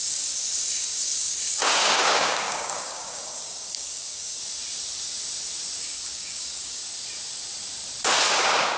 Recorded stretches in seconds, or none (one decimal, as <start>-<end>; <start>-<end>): 4.4-5.8; 6.8-8.3